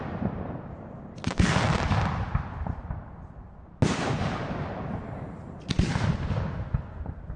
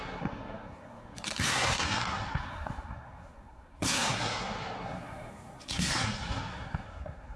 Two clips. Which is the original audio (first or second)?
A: first